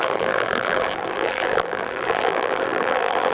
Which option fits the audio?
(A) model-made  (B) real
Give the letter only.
A